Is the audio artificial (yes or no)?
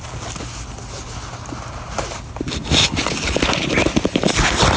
no